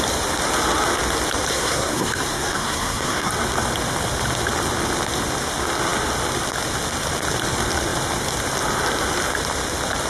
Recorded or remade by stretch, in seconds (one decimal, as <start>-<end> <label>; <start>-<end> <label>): 0.0-1.5 recorded; 1.5-3.3 remade; 3.3-10.1 recorded

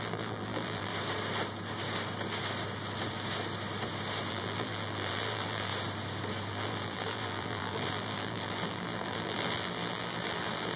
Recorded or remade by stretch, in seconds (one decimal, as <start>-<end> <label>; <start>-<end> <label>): 0.0-0.9 remade; 0.9-4.3 recorded; 4.3-5.7 remade; 5.7-6.5 recorded; 6.5-10.8 remade

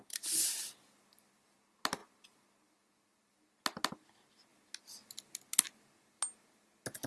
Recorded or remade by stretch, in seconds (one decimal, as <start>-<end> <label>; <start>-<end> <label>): 0.0-7.1 recorded

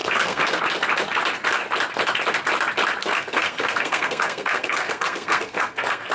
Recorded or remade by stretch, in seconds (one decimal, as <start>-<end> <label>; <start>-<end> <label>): 0.0-0.6 remade; 0.6-3.0 recorded; 3.0-6.1 remade

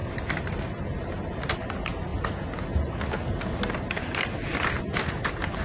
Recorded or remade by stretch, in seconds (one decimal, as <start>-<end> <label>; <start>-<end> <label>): 0.0-5.6 recorded

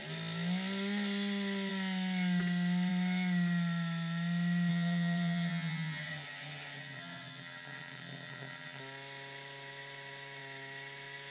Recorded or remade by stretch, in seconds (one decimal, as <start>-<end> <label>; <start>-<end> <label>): 0.0-4.7 recorded; 4.7-8.8 remade; 8.8-11.3 recorded